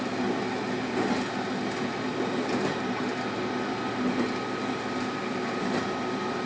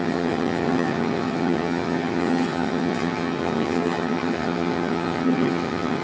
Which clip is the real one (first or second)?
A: first